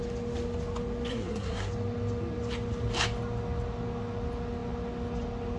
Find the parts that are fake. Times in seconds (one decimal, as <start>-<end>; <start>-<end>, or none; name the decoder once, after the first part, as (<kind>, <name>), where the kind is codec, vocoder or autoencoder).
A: 1.1-1.7 (codec, SNAC)